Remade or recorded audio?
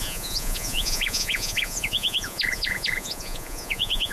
remade